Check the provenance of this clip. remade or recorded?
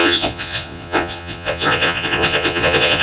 remade